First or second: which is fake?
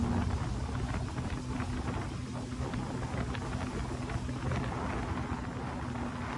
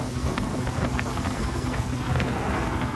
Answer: second